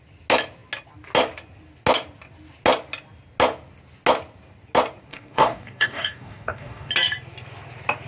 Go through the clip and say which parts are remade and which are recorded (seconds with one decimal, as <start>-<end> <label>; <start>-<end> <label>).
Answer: 0.0-5.1 recorded; 5.1-6.9 remade; 6.9-8.1 recorded